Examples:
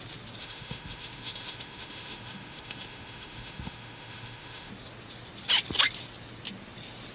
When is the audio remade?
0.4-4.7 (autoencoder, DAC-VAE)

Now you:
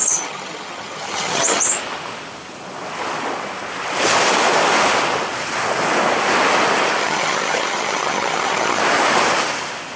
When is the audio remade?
0.0-1.6 (vocoder, HiFi-GAN); 7.0-8.8

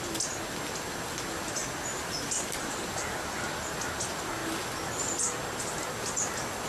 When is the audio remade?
1.6-3.3 (vocoder, BigVGAN v2)

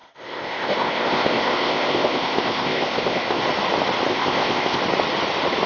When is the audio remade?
0.0-3.4 (codec, ZipCodec); 4.1-4.8

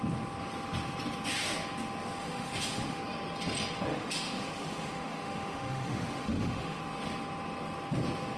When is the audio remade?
2.2-3.0 (autoencoder, DAC-VAE); 3.9-6.8